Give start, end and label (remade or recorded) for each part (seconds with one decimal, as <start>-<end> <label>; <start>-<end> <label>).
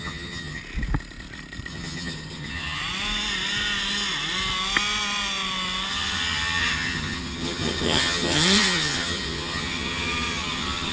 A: 0.0-0.6 remade; 0.6-1.7 recorded; 1.7-2.8 remade; 2.8-5.9 recorded; 5.9-10.9 remade